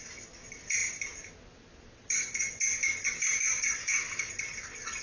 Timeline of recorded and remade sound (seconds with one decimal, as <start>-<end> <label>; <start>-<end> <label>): 0.0-3.8 recorded; 3.8-4.3 remade; 4.3-5.0 recorded